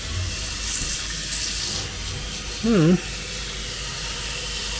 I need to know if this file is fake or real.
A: real